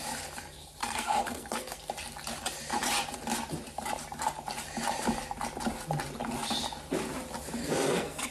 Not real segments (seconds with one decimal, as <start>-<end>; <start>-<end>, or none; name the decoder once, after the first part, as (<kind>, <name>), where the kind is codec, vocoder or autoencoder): 0.8-1.8 (codec, SNAC); 7.6-8.3